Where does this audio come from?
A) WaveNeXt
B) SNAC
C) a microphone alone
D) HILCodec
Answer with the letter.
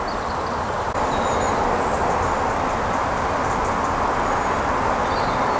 C